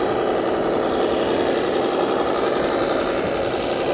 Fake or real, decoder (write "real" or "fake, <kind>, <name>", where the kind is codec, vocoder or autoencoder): real